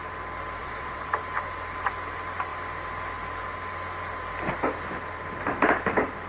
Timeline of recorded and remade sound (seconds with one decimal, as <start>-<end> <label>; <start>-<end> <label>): 0.0-0.6 recorded; 0.6-1.1 remade; 1.1-6.3 recorded